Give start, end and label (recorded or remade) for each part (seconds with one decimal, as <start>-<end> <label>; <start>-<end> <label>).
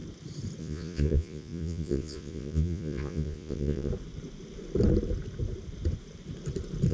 0.0-0.6 recorded; 0.6-3.9 remade; 3.9-6.9 recorded